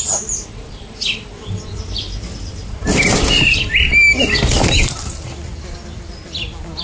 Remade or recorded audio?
recorded